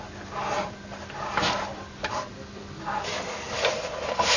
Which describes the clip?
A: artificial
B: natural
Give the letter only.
B